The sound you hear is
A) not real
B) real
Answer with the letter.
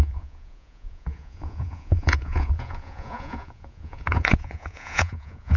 A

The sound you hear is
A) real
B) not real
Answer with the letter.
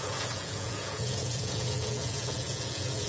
B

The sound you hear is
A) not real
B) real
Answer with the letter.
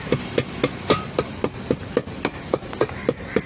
B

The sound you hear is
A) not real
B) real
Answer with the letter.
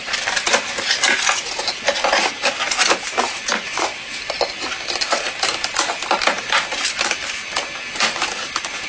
B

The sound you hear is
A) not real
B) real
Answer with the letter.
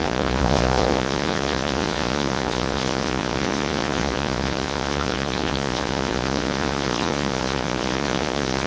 A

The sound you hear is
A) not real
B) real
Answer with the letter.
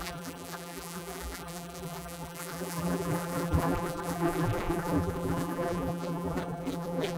A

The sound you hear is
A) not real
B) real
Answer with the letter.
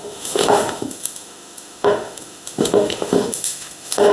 A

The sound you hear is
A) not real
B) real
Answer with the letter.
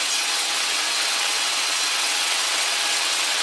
A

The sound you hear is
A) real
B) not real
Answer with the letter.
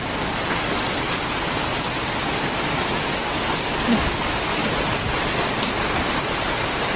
B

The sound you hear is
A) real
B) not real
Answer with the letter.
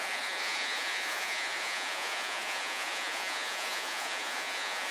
B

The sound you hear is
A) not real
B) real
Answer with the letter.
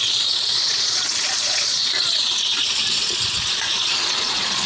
A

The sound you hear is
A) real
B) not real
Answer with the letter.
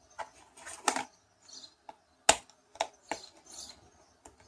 A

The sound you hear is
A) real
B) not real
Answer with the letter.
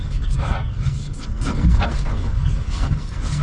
B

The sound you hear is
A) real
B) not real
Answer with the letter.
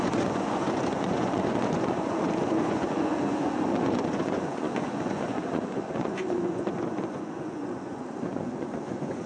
B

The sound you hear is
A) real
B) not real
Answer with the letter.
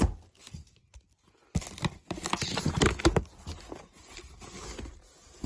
A